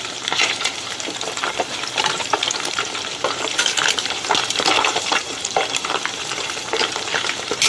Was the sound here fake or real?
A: fake